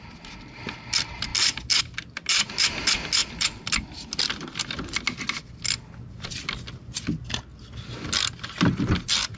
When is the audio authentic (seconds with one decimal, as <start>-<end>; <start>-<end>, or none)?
0.0-9.4